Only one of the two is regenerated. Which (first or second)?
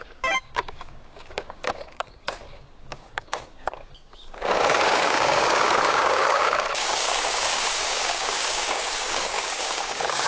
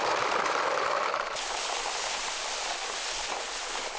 first